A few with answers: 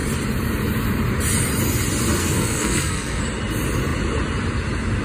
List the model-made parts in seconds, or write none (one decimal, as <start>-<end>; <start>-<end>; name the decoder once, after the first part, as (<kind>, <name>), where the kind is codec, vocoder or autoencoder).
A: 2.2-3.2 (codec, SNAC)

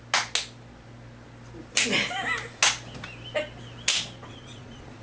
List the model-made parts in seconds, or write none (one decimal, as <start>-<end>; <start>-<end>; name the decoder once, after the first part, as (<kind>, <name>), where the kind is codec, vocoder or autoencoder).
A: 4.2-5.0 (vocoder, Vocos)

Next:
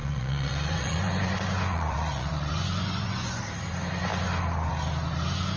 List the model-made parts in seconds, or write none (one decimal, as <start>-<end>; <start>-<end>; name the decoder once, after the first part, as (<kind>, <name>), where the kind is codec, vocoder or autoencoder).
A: 0.0-3.4 (vocoder, Vocos)